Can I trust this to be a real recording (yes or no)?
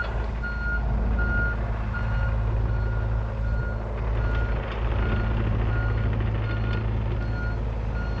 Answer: yes